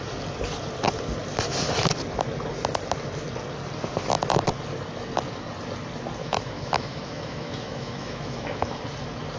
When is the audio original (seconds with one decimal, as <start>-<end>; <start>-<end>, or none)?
0.0-6.2; 8.8-9.4